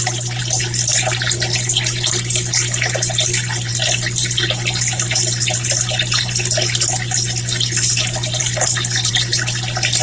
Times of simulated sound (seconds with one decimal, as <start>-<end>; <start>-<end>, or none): none